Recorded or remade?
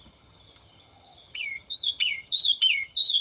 remade